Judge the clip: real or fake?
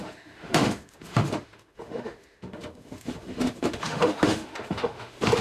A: fake